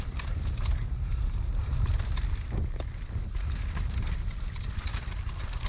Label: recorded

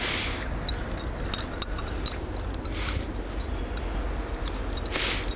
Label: recorded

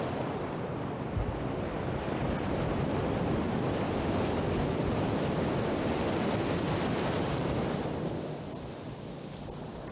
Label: recorded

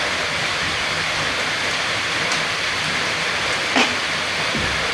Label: recorded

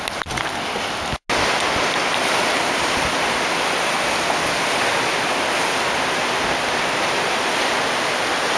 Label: recorded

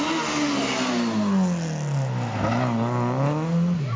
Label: recorded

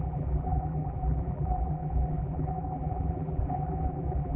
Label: remade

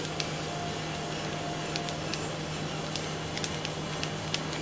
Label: recorded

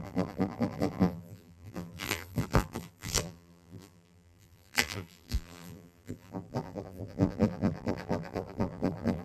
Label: remade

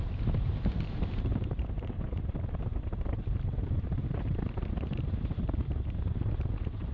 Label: remade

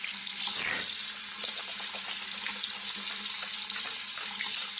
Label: recorded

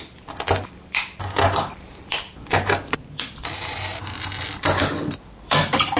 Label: remade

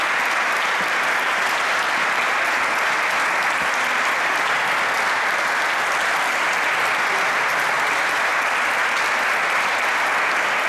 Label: recorded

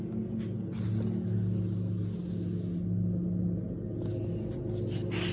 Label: recorded